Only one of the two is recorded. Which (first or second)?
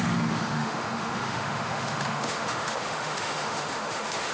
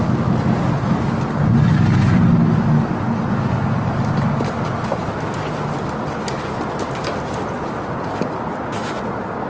second